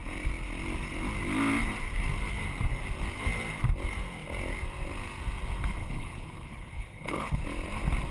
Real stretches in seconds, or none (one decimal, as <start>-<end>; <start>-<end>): 0.0-5.8; 7.4-8.1